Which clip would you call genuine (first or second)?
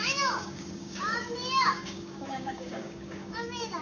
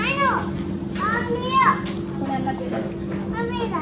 second